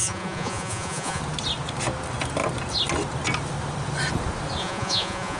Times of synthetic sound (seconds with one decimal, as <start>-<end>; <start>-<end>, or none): 0.0-1.2; 4.6-5.4